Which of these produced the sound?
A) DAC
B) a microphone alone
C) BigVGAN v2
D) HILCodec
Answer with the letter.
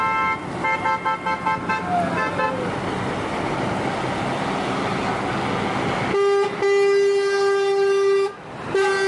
B